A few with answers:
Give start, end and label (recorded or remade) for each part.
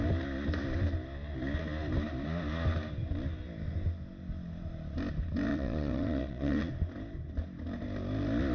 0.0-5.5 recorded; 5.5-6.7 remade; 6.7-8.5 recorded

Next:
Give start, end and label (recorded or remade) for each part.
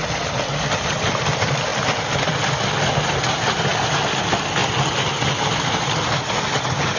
0.0-7.0 recorded